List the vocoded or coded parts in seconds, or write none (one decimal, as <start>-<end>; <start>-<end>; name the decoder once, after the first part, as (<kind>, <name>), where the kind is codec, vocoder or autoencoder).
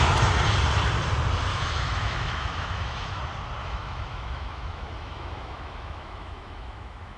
1.5-3.2 (autoencoder, DAC-VAE); 3.6-7.2